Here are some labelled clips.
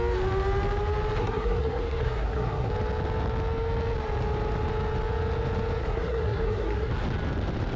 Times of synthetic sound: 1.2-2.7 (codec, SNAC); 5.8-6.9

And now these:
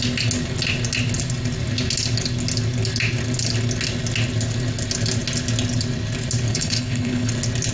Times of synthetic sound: 6.5-7.3 (codec, HILCodec)

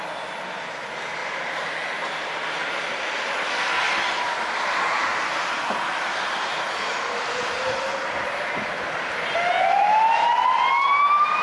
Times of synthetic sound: 1.2-1.9 (vocoder, BigVGAN v2); 5.1-7.8